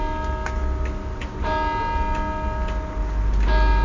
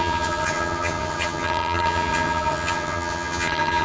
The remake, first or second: second